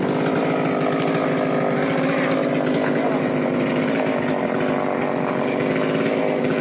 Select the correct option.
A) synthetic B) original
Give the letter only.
B